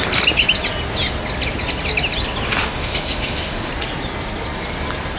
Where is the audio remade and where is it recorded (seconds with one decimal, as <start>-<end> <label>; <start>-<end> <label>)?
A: 0.0-2.6 recorded; 2.6-3.7 remade; 3.7-5.2 recorded